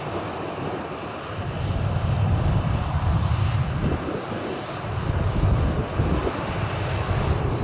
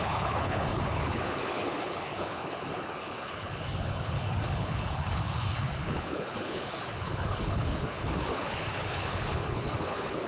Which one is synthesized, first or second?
second